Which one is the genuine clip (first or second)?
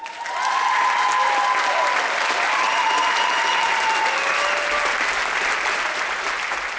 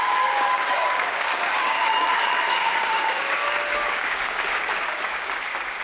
first